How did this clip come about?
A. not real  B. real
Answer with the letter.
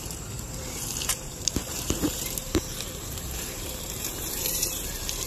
A